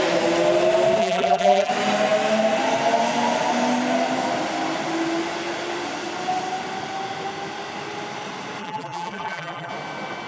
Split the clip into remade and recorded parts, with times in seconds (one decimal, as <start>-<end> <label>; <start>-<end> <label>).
0.0-1.0 recorded; 1.0-1.7 remade; 1.7-8.6 recorded; 8.6-9.7 remade; 9.7-10.3 recorded